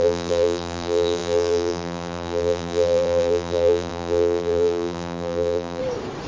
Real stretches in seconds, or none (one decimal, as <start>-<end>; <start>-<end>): 5.8-6.3